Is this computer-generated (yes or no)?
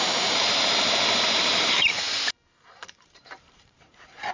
yes